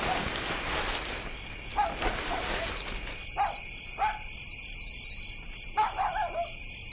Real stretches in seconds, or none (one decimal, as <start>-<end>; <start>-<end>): 0.0-6.9